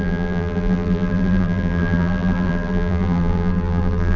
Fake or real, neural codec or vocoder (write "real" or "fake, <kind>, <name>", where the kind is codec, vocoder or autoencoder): fake, vocoder, BigVGAN v2